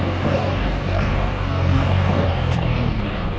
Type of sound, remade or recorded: remade